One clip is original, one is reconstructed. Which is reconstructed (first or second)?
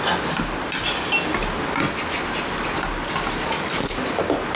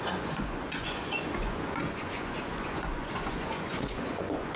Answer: second